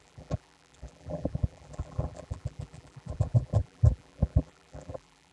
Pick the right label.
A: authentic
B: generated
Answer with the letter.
B